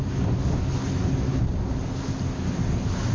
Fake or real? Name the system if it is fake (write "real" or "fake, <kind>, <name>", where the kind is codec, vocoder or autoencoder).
real